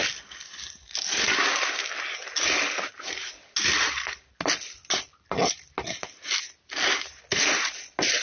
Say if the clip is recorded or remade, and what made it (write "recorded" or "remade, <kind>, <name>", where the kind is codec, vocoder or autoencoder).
recorded